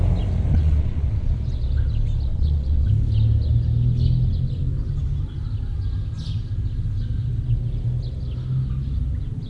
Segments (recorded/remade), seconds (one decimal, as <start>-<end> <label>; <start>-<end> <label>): 0.0-0.5 recorded; 0.5-1.3 remade; 1.3-2.3 recorded; 2.3-2.9 remade; 2.9-9.5 recorded